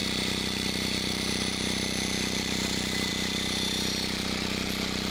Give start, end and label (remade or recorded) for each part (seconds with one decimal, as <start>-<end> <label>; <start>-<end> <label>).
0.0-3.1 remade; 3.1-5.1 recorded